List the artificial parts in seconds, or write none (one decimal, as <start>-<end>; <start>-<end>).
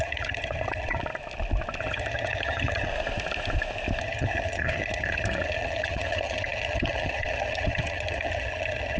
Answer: 0.0-1.0; 1.8-2.9; 4.0-9.0